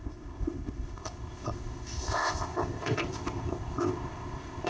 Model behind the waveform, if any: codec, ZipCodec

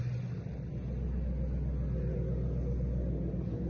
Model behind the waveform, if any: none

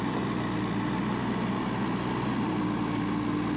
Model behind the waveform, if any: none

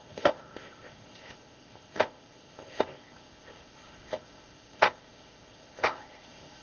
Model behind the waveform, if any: codec, ZipCodec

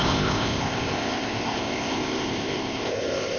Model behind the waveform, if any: codec, ZipCodec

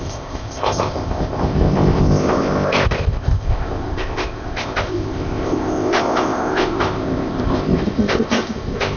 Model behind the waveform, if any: codec, ZipCodec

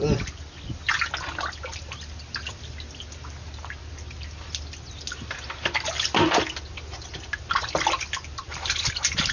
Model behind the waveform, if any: none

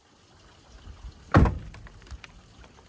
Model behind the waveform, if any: none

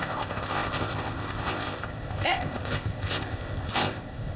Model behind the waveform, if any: codec, ZipCodec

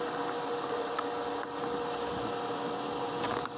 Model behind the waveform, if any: none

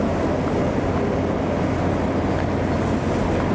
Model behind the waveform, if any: none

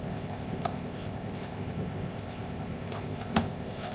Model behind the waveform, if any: codec, ZipCodec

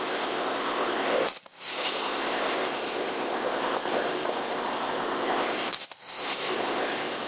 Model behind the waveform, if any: codec, ZipCodec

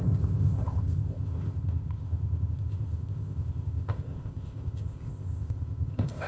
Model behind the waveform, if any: codec, ZipCodec